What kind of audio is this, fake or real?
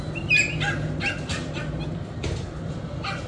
real